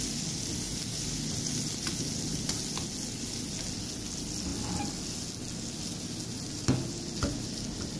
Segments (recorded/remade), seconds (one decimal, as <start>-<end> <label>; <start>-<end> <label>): 0.0-8.0 recorded